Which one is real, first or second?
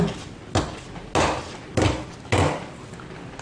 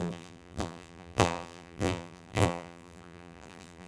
first